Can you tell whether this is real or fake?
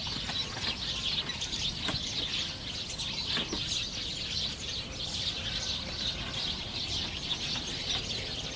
real